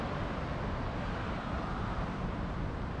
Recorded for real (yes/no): yes